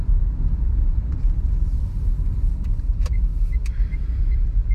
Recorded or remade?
remade